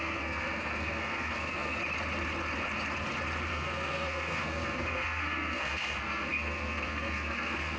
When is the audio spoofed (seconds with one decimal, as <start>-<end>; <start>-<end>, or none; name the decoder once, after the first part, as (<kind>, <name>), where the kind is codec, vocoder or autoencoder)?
0.0-1.8 (codec, SNAC); 3.5-7.8